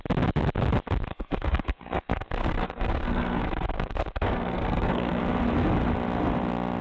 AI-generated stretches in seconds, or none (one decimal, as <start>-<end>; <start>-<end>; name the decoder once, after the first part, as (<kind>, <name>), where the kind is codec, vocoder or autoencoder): 1.1-5.2 (codec, SNAC)